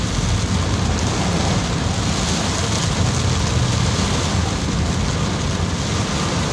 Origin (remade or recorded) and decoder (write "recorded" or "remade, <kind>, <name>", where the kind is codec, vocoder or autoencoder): recorded